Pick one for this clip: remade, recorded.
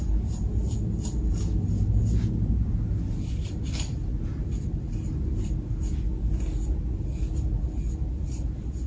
recorded